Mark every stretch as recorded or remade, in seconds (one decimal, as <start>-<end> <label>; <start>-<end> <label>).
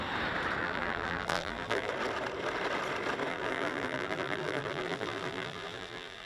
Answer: 0.0-0.6 recorded; 0.6-1.9 remade; 1.9-3.3 recorded; 3.3-6.3 remade